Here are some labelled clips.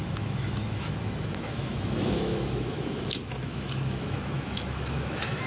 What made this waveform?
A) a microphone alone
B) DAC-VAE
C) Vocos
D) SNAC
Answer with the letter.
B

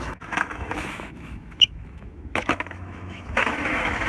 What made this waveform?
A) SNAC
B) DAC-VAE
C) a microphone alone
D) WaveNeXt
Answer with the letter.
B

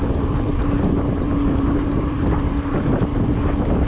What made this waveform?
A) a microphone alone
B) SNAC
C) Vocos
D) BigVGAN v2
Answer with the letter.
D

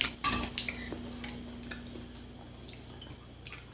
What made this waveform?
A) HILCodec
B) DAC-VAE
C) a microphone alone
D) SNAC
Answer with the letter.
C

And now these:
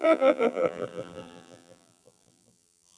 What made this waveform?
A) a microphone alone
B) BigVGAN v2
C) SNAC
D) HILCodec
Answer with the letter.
B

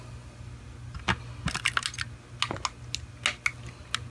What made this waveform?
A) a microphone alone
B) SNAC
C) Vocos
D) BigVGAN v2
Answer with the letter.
A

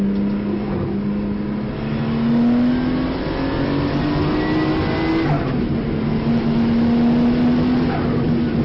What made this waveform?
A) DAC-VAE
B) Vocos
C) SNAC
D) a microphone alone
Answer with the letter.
D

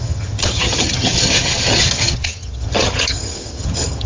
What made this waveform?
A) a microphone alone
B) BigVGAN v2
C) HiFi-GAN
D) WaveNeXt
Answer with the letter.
C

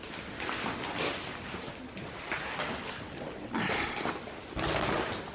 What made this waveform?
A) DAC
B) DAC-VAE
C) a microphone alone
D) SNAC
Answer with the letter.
C